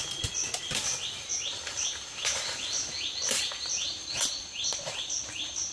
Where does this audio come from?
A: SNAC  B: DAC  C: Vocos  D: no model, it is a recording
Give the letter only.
D